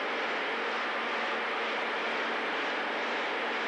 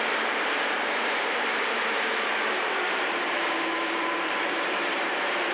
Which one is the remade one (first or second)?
second